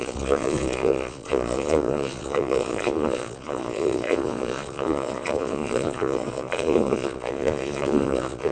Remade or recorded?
remade